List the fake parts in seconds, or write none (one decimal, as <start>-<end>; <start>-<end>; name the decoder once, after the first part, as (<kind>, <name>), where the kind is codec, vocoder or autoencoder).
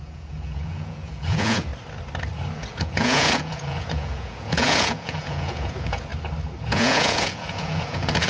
0.0-1.7 (vocoder, Vocos); 2.5-6.1; 6.7-8.3